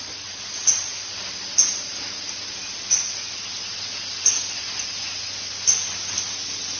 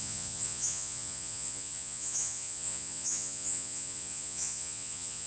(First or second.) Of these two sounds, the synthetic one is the second